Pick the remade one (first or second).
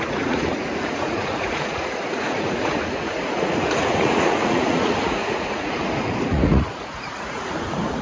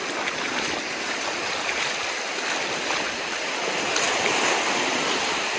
first